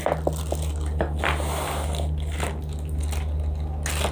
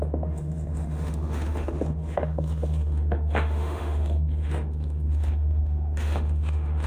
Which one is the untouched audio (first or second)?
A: first